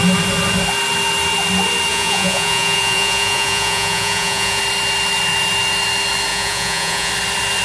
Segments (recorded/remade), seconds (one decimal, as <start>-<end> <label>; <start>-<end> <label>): 0.0-1.9 recorded; 1.9-4.6 remade; 4.6-6.3 recorded; 6.3-7.1 remade; 7.1-7.6 recorded